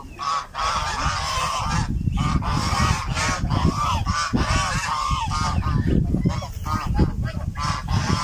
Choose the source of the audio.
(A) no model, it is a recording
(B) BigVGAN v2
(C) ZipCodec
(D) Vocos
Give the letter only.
A